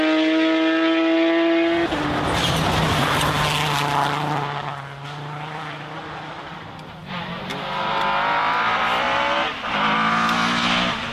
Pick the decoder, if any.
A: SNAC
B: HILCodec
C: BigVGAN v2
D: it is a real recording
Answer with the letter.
D